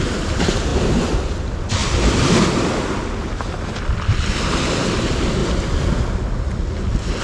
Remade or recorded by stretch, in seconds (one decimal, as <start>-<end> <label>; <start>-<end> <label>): 0.0-7.2 recorded